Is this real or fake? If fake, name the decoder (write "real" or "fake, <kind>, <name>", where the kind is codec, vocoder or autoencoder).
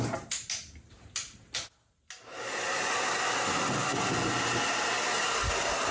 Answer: real